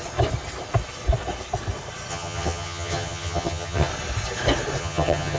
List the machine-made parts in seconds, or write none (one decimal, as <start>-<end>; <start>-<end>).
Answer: 2.1-3.9; 4.8-5.4